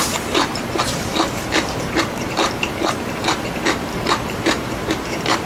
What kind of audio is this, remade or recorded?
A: remade